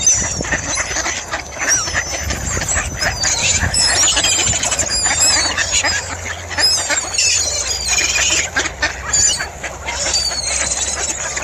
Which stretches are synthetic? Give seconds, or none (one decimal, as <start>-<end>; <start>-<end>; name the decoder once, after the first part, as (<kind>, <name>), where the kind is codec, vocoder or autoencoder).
3.4-3.9 (autoencoder, DAC-VAE)